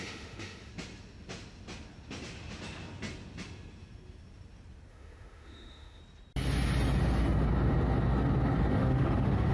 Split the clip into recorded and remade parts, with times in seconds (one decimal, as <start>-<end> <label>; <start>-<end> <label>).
0.0-0.7 remade; 0.7-4.9 recorded; 4.9-6.0 remade; 6.0-8.7 recorded; 8.7-9.5 remade